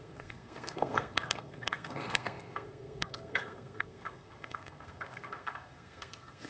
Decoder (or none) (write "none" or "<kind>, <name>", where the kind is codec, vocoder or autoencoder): codec, SNAC